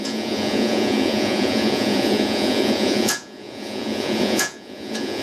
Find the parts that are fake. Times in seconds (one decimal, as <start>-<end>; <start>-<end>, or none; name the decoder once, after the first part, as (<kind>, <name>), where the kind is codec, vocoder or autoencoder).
0.0-5.2 (vocoder, Vocos)